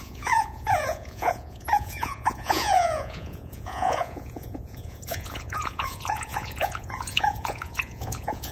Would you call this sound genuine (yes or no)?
no